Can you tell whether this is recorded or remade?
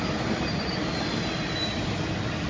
recorded